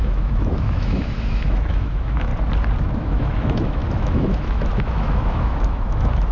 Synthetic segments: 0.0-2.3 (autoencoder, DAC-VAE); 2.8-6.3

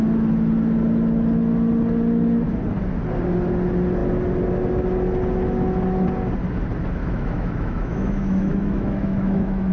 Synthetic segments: 7.0-9.7 (autoencoder, DAC-VAE)

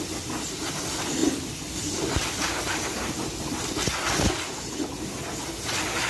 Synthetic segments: none

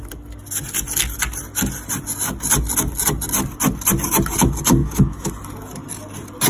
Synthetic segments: 4.8-5.3 (autoencoder, DAC-VAE)